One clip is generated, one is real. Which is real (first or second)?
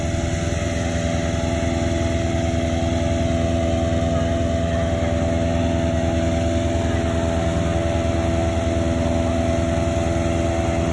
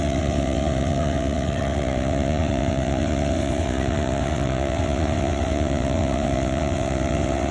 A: first